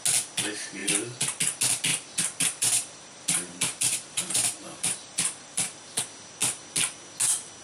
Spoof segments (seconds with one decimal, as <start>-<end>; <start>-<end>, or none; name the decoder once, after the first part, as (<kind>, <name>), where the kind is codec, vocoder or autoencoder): 0.8-1.4 (vocoder, BigVGAN v2); 1.9-6.0